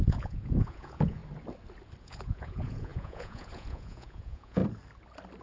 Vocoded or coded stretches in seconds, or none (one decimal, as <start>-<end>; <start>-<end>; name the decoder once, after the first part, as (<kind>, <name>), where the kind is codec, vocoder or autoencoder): 0.0-1.2 (vocoder, Vocos); 2.0-4.6